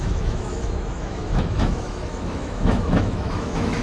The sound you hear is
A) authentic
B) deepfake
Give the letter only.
B